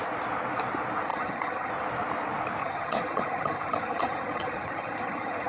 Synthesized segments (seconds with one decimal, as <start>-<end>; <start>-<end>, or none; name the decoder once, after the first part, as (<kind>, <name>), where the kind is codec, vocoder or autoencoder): 1.1-1.7 (vocoder, HiFi-GAN); 2.6-5.5